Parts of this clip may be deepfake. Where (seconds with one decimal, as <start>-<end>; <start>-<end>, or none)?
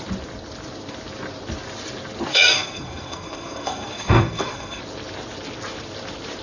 2.3-4.8